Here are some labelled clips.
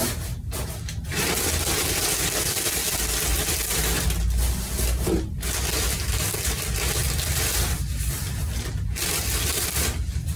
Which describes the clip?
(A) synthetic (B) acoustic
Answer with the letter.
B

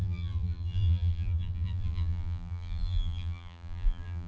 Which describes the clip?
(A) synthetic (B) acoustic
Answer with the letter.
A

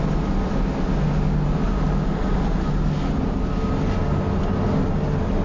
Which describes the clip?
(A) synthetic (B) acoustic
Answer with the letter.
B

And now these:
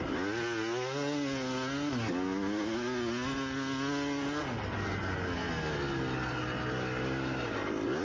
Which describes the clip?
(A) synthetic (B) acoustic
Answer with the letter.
B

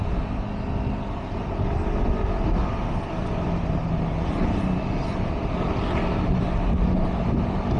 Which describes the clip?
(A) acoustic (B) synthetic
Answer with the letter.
A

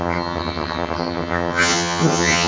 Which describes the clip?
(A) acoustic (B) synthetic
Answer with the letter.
B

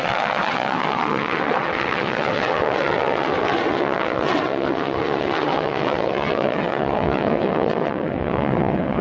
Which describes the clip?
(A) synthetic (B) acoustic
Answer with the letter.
A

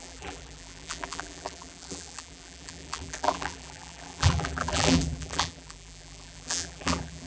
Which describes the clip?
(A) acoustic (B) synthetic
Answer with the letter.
B